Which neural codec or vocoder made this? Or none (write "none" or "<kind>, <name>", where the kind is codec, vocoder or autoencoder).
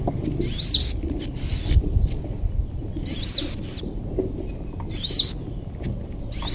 none